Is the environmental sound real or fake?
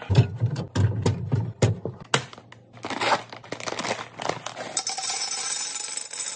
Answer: real